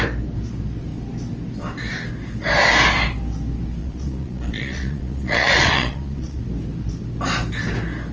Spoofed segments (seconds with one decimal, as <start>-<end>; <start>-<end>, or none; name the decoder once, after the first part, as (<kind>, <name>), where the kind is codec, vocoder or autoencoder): 3.8-6.4 (vocoder, Vocos)